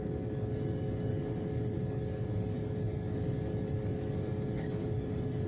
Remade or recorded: remade